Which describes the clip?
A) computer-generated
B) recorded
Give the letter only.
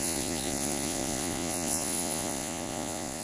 A